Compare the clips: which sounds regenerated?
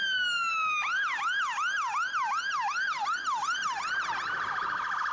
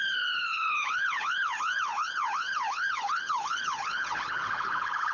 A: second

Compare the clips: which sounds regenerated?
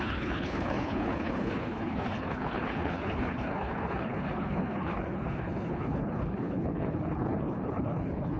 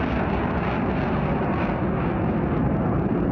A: first